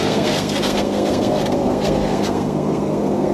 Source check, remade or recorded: remade